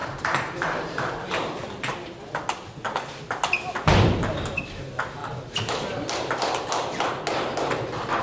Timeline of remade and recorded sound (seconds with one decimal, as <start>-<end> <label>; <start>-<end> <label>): 0.0-1.1 remade; 1.1-8.2 recorded

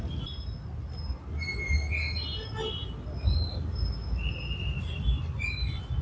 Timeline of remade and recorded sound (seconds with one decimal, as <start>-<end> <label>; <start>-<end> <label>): 0.0-6.0 recorded

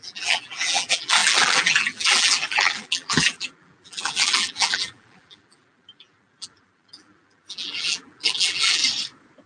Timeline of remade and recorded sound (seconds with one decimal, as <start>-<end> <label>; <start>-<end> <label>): 0.0-8.8 remade; 8.8-9.5 recorded

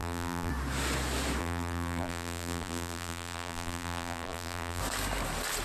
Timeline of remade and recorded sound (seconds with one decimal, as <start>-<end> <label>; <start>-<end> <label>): 0.0-0.5 remade; 0.5-1.4 recorded; 1.4-4.8 remade; 4.8-5.6 recorded